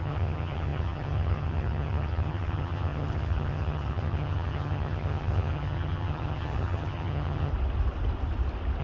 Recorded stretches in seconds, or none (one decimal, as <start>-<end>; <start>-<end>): 7.5-8.8